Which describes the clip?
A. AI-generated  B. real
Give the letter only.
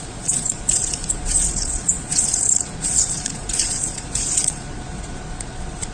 A